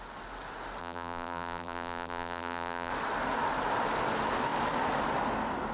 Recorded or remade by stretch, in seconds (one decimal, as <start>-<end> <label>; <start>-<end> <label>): 0.0-0.8 recorded; 0.8-2.9 remade; 2.9-5.7 recorded